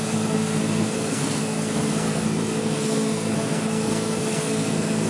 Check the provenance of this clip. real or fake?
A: fake